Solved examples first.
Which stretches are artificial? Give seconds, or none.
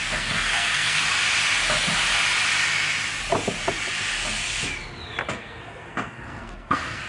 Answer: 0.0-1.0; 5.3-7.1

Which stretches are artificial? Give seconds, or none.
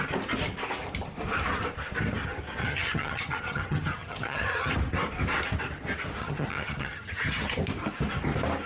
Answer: 2.6-4.7; 6.2-7.6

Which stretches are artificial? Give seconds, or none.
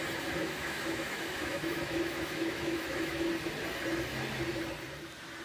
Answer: 0.4-3.3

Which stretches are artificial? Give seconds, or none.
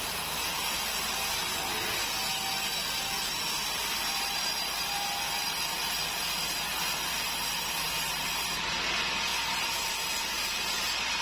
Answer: none